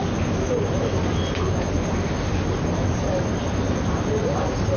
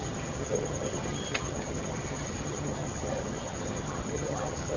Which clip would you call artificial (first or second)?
second